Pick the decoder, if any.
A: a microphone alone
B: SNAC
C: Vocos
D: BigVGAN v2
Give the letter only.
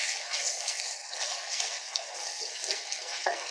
B